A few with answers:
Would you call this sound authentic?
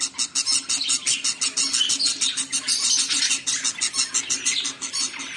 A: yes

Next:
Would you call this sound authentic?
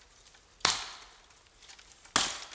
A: yes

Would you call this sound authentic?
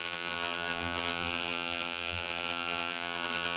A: no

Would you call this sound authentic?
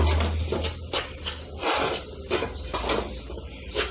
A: yes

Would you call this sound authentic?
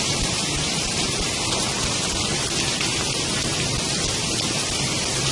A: no